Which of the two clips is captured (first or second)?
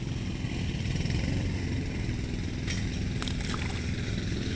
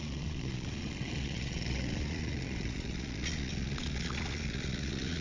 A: first